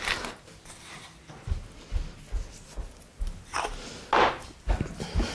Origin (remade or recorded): recorded